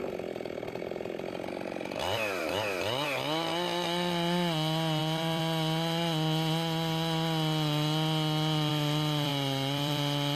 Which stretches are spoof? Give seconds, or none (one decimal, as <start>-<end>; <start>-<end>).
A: 0.0-2.4; 5.0-5.4; 8.7-10.4